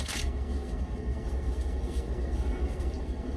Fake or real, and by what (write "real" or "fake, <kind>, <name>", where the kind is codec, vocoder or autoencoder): fake, codec, SNAC